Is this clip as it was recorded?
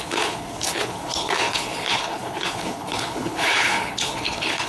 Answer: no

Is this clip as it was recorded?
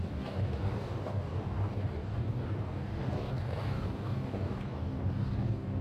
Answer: no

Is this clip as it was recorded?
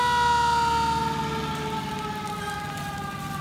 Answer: yes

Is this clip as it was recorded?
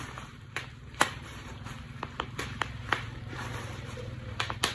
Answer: no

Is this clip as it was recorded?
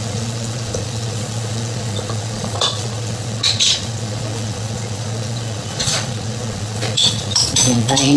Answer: no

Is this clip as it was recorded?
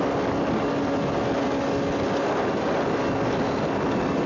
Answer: yes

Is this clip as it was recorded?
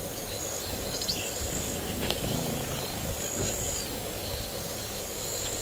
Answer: no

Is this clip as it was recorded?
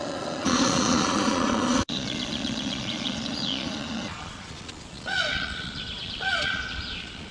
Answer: no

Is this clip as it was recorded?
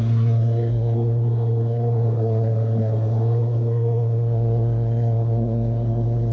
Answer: no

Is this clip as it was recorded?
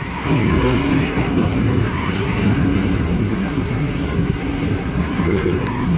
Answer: no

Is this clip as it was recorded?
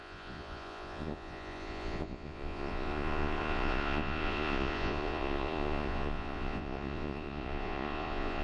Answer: no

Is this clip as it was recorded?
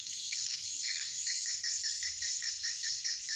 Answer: no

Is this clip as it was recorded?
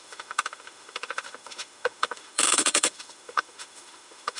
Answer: no